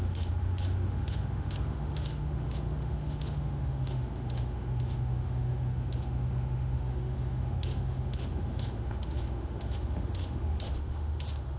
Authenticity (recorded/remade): remade